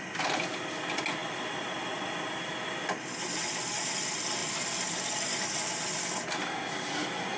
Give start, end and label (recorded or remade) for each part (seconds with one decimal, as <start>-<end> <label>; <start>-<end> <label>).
0.0-7.4 recorded